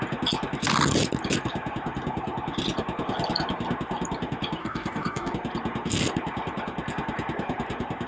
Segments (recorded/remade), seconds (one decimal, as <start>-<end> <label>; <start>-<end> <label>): 0.0-4.6 recorded; 4.6-5.3 remade; 5.3-8.1 recorded